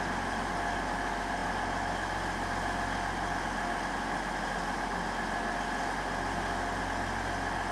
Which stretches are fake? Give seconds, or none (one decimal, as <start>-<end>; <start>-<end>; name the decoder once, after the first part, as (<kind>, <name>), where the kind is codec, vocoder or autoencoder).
none